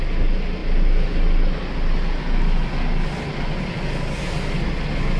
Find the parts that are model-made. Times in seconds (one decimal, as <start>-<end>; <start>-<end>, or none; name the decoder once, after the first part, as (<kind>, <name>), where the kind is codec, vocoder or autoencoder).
none